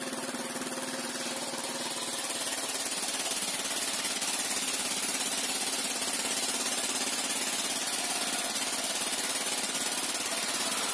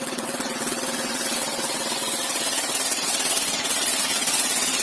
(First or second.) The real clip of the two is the first